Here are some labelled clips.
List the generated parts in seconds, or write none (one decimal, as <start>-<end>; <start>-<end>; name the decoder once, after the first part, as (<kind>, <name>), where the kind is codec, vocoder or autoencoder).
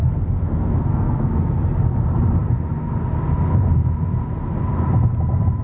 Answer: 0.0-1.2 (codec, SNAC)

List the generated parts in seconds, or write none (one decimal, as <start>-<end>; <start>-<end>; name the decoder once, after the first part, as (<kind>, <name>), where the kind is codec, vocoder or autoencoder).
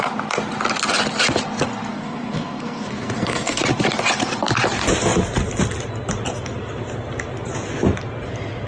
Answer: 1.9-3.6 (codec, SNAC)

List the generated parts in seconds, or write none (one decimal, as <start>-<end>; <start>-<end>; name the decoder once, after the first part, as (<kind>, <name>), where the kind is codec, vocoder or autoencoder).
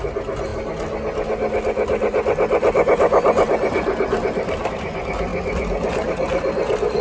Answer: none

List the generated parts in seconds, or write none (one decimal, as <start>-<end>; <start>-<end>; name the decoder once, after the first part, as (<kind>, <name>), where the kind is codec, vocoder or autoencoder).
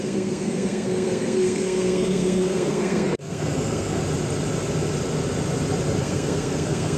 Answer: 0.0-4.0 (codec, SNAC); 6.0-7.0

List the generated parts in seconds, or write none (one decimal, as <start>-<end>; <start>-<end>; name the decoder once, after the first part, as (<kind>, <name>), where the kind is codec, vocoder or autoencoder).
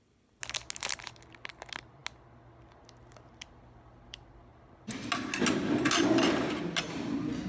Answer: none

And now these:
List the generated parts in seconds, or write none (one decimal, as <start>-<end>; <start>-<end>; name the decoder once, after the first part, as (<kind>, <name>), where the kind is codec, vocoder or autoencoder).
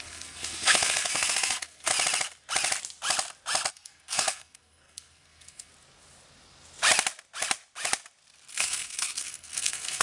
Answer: 0.0-1.9 (codec, SNAC); 3.7-5.7; 8.5-10.0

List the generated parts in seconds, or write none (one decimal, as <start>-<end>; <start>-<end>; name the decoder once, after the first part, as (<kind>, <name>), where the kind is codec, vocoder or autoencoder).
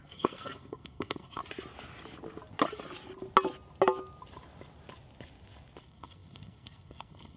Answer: 0.0-1.4 (codec, SNAC); 5.8-7.4